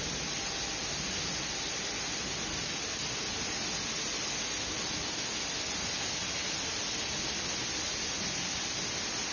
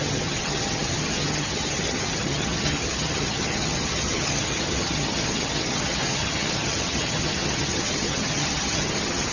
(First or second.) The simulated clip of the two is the second